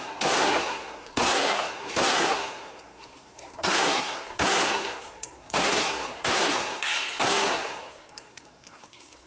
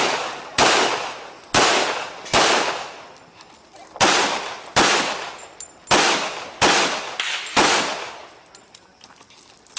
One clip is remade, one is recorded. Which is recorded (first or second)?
second